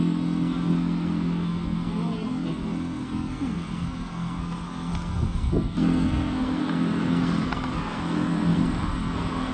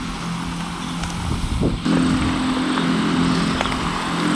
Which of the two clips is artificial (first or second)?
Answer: first